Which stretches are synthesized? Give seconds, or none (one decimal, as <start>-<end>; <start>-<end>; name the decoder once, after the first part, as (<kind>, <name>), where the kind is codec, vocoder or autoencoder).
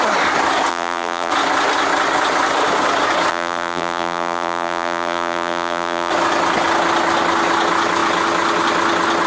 0.7-1.3 (vocoder, BigVGAN v2); 3.3-6.1